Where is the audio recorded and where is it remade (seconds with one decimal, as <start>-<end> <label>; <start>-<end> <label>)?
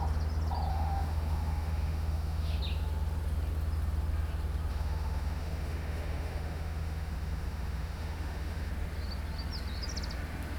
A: 0.0-0.7 recorded; 0.7-2.6 remade; 2.6-4.7 recorded; 4.7-8.7 remade; 8.7-10.6 recorded